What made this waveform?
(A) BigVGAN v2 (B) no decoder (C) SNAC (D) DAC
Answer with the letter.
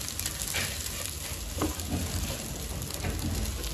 B